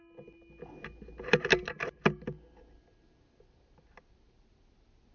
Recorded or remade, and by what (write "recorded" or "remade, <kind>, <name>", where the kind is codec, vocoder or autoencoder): recorded